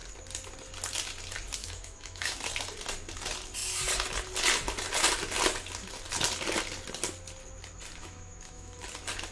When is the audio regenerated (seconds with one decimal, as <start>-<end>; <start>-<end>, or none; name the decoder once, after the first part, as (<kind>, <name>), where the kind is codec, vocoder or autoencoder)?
1.6-2.4 (autoencoder, DAC-VAE); 8.0-8.8